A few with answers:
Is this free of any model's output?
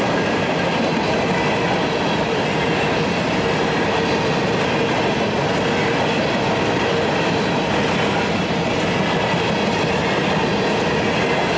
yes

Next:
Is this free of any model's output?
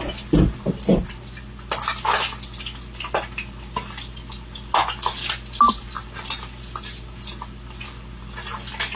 yes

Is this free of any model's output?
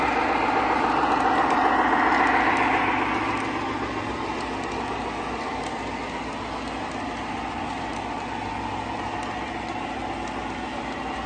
yes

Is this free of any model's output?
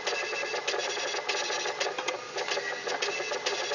yes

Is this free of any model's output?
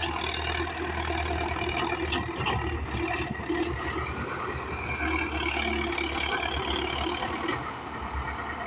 yes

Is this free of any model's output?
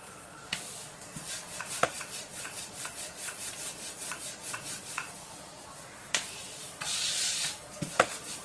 no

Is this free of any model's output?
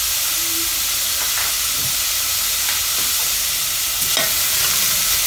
yes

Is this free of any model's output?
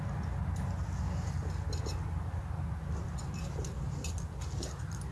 yes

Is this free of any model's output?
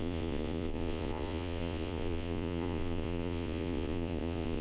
no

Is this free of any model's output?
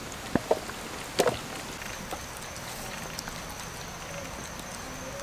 yes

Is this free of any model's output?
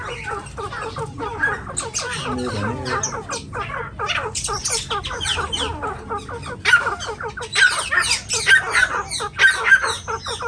yes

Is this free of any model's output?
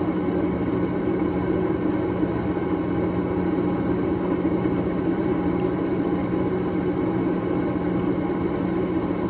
yes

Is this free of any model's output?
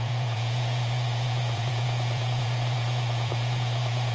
no